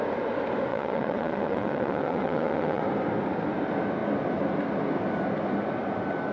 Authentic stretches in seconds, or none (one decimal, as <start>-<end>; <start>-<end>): 0.0-0.7; 2.8-6.3